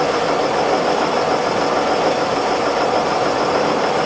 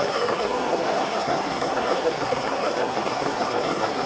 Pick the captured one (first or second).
first